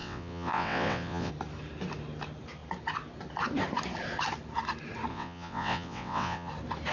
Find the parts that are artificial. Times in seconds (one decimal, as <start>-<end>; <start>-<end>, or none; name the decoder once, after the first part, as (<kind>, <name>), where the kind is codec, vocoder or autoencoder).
0.0-1.3 (vocoder, WaveNeXt); 5.1-6.5